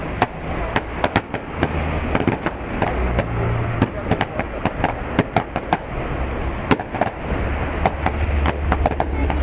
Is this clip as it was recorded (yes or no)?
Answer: yes